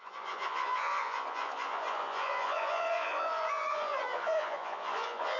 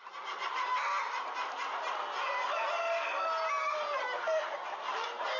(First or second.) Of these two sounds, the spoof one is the first